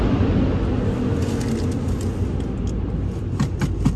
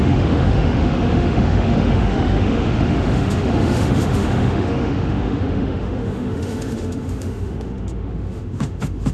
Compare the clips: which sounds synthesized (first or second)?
second